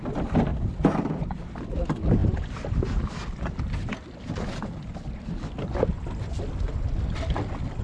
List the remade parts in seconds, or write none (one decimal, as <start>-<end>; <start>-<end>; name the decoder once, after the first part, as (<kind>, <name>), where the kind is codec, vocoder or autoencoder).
none